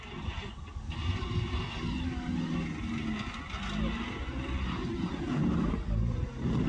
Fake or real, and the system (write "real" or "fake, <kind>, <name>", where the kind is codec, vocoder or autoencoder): real